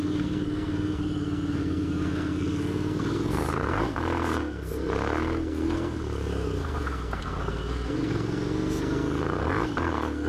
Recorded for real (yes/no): no